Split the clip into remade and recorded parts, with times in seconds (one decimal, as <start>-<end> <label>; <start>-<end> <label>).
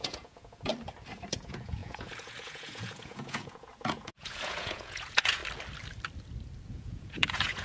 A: 0.0-0.7 remade; 0.7-1.3 recorded; 1.3-5.4 remade; 5.4-6.7 recorded; 6.7-7.6 remade